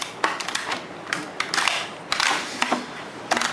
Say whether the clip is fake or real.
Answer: real